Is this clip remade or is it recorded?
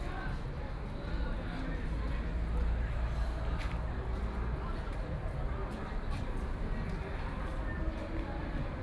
recorded